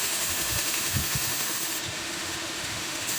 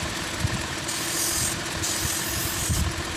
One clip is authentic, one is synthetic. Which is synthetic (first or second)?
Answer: first